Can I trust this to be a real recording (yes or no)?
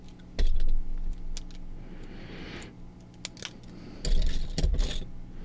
yes